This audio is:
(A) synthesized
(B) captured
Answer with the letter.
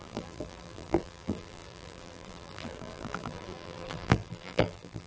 A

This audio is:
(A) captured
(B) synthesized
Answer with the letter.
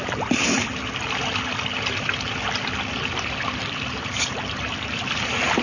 A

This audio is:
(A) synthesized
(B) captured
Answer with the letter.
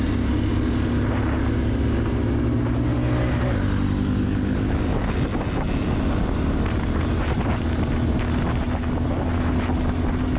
B